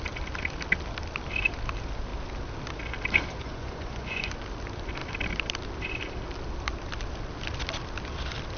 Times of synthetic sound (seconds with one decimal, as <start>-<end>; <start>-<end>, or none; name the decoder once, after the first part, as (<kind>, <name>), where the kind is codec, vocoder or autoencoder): 3.3-4.3 (vocoder, Vocos)